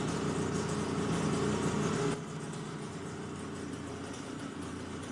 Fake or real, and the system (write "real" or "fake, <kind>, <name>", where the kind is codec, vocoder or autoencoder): real